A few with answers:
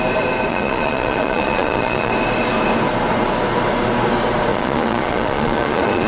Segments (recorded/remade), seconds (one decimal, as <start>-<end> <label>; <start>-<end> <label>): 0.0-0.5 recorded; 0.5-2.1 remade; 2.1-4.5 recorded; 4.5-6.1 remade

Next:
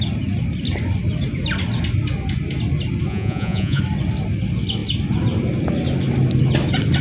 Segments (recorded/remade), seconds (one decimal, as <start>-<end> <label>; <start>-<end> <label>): 0.0-3.1 recorded; 3.1-3.8 remade; 3.8-7.0 recorded

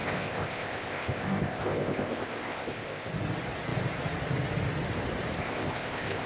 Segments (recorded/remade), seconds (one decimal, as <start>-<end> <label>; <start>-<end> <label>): 0.0-3.1 remade; 3.1-5.4 recorded; 5.4-6.3 remade

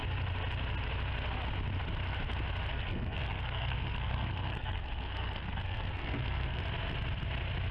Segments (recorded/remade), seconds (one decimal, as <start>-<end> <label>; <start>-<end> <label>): 0.0-2.7 recorded; 2.7-6.6 remade; 6.6-7.7 recorded